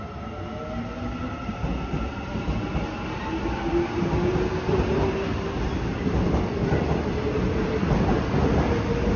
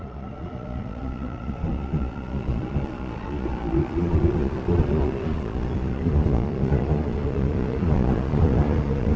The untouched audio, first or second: first